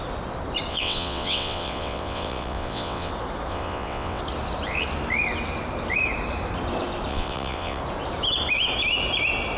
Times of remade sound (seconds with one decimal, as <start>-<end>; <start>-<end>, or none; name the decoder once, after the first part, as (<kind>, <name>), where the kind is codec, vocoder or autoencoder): 0.7-3.1 (vocoder, WaveNeXt); 3.5-4.2; 7.1-7.8